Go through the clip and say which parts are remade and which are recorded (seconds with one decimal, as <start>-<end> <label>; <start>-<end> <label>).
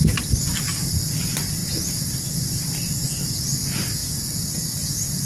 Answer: 0.0-5.3 recorded